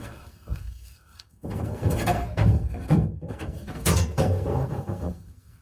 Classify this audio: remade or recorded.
remade